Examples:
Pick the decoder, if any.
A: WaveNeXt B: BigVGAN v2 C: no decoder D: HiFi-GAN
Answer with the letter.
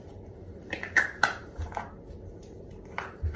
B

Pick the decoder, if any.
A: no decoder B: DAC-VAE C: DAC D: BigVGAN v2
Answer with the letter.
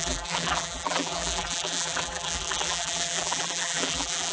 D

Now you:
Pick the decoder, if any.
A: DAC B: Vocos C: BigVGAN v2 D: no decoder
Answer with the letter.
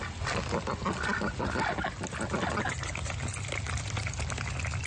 D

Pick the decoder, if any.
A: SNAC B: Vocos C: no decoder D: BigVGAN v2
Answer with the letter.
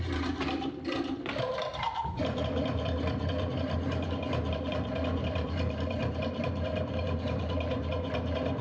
D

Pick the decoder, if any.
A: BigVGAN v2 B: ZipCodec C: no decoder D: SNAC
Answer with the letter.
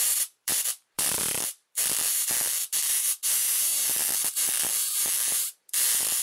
A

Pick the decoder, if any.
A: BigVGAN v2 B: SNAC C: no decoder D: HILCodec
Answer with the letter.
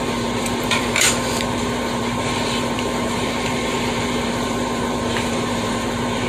A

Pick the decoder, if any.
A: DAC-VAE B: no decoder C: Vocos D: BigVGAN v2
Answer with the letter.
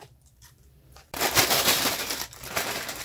D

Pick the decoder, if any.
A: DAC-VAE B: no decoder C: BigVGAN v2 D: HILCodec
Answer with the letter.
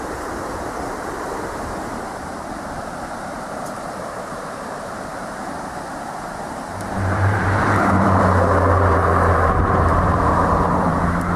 C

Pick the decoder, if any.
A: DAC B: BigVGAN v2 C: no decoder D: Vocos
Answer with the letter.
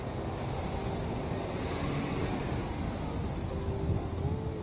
C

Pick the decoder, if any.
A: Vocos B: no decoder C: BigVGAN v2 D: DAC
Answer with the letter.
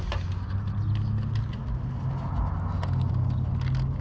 B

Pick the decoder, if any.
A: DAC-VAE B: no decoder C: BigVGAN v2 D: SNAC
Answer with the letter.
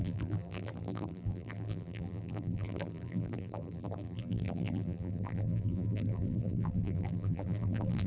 C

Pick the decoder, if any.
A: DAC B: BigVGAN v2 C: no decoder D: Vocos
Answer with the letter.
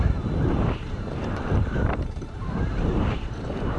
B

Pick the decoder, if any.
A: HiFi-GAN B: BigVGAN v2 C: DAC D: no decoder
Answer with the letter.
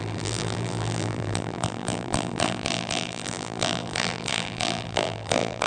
B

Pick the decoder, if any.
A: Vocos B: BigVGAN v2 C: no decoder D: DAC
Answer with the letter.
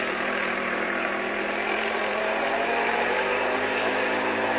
B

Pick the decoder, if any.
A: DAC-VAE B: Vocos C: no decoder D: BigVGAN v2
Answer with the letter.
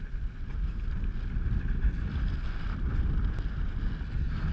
C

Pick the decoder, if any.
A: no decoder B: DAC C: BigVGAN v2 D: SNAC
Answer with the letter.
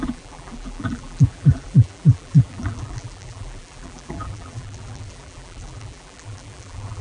C